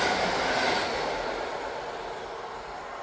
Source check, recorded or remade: recorded